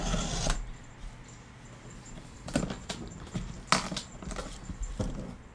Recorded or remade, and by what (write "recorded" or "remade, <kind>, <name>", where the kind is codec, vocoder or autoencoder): recorded